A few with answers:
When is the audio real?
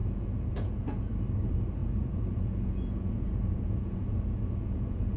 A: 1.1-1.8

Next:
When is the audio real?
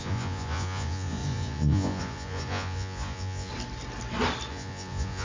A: 3.5-4.5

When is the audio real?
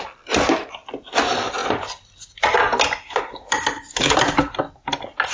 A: 0.0-5.3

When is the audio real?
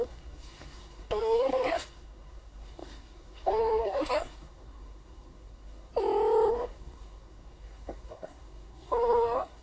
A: 5.9-6.5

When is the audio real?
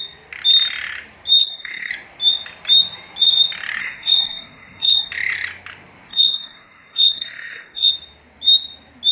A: 0.0-1.4; 1.9-3.8; 5.1-6.1; 7.9-9.1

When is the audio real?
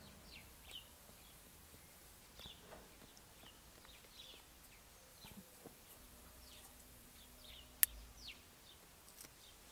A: 0.0-0.4; 2.2-5.1; 7.5-9.7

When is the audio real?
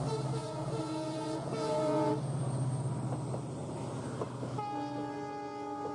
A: 0.0-0.4; 2.1-5.9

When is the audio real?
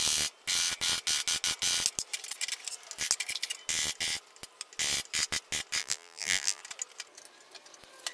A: 0.0-5.8; 6.6-8.1